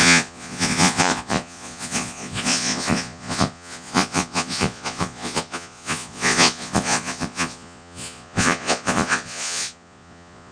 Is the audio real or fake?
fake